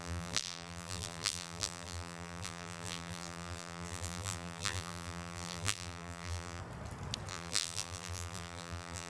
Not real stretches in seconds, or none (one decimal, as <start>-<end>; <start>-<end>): 0.0-6.6; 7.3-9.1